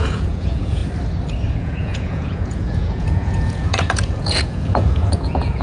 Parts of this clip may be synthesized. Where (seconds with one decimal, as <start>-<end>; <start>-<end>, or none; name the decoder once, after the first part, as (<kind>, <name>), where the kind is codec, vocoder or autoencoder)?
0.0-0.8 (vocoder, Vocos); 1.6-5.6